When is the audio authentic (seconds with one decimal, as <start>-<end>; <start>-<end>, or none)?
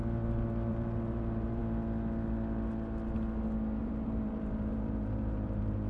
0.0-0.7; 1.6-3.8